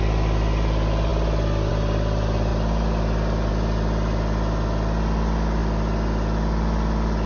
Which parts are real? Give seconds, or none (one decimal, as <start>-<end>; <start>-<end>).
0.0-7.3